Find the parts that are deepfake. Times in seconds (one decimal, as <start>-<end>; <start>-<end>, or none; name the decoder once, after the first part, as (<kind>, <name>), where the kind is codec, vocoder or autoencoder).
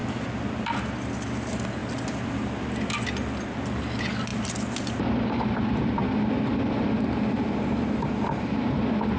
none